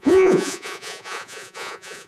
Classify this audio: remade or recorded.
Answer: remade